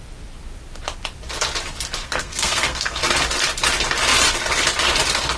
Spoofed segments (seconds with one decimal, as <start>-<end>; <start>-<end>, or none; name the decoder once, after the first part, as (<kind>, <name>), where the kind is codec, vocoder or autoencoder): 2.0-3.0 (codec, SNAC)